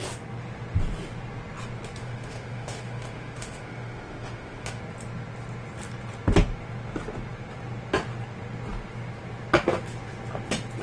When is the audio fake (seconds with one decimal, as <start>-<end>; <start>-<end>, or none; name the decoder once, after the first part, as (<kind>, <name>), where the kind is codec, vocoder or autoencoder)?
2.0-4.8 (autoencoder, DAC-VAE)